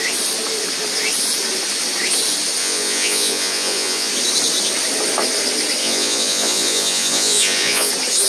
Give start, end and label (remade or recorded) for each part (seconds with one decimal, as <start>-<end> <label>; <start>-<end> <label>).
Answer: 0.0-2.6 recorded; 2.6-4.1 remade; 4.1-5.8 recorded; 5.8-7.9 remade; 7.9-8.3 recorded